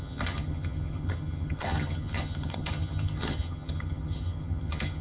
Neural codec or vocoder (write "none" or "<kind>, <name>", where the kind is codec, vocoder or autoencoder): vocoder, HiFi-GAN